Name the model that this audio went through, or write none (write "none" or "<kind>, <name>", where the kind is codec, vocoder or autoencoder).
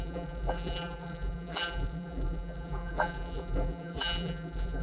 vocoder, BigVGAN v2